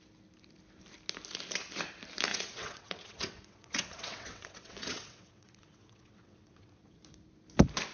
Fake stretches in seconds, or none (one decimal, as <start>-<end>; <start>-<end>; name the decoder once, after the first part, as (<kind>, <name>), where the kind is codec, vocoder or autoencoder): 2.3-7.0 (vocoder, WaveNeXt)